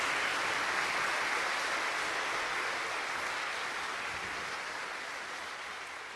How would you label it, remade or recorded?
recorded